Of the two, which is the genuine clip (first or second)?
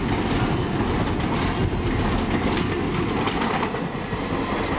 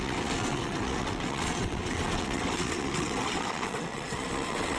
first